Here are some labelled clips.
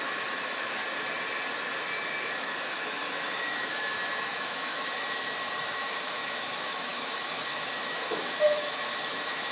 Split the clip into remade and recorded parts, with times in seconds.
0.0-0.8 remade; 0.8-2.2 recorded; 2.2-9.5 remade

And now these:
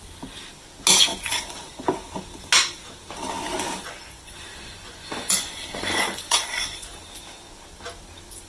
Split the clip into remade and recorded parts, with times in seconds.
0.0-1.1 recorded; 1.1-1.7 remade; 1.7-3.8 recorded; 3.8-7.0 remade; 7.0-8.5 recorded

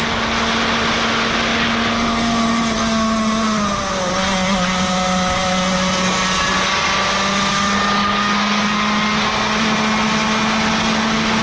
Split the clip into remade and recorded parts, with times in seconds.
0.0-11.4 recorded

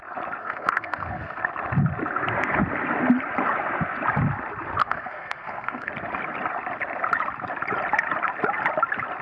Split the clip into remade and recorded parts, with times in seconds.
0.0-0.4 recorded; 0.4-1.4 remade; 1.4-4.8 recorded; 4.8-5.9 remade; 5.9-9.2 recorded

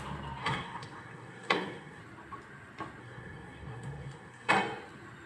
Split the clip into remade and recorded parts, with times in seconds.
0.0-0.4 recorded; 0.4-2.0 remade; 2.0-3.0 recorded; 3.0-4.5 remade; 4.5-5.3 recorded